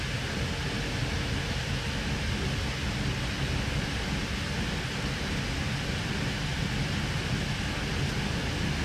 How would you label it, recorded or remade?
recorded